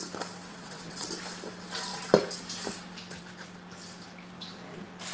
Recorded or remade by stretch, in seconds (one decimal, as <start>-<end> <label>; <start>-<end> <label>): 0.0-0.5 recorded; 0.5-1.1 remade; 1.1-5.1 recorded